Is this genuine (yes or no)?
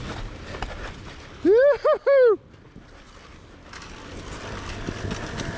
yes